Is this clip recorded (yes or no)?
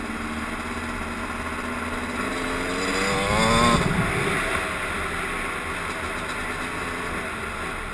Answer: yes